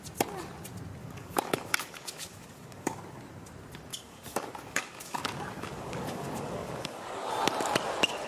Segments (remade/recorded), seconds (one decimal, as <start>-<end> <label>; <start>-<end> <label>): 0.0-1.0 recorded; 1.0-3.2 remade; 3.2-3.9 recorded; 3.9-7.3 remade; 7.3-8.3 recorded